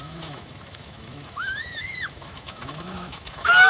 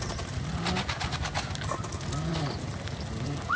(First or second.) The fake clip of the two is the first